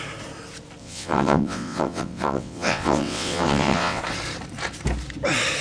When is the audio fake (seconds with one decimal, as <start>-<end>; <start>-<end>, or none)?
0.8-4.0